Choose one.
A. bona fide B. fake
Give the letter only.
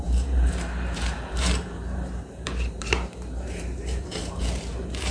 B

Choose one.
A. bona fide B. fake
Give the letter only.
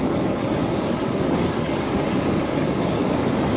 B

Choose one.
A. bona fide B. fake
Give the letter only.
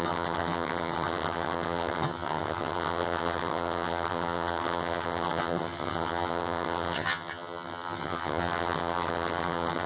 B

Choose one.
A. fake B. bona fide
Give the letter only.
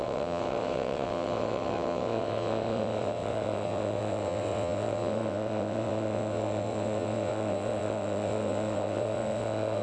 A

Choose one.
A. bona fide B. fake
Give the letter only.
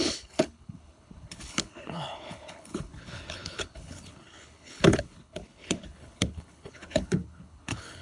B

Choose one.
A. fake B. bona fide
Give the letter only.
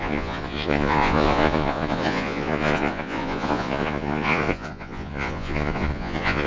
A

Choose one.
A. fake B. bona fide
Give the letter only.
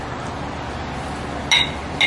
B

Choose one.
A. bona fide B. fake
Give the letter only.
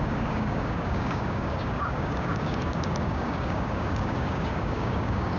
B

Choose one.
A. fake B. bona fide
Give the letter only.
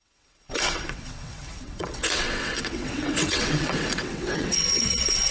A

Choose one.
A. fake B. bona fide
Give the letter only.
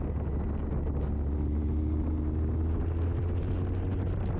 B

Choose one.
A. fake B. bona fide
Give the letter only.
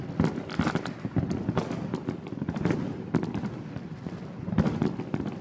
B